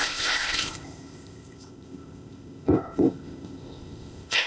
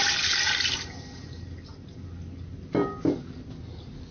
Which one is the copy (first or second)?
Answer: first